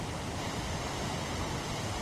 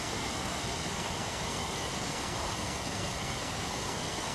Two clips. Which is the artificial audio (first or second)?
second